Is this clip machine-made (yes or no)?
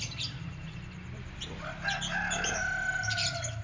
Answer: no